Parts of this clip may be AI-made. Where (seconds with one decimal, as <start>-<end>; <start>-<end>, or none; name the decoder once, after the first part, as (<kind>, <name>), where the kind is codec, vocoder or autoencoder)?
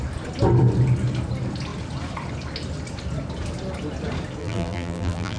4.4-5.4 (vocoder, BigVGAN v2)